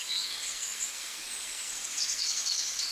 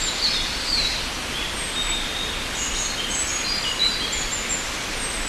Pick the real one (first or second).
second